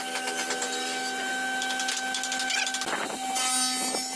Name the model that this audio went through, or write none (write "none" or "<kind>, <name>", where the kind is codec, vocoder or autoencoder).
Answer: none